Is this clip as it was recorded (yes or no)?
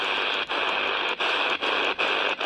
yes